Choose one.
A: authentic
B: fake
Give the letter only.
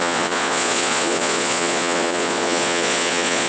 B